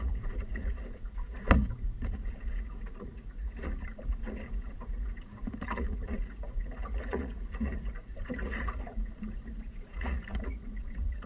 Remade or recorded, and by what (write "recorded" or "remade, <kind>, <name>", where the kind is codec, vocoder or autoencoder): remade, vocoder, Vocos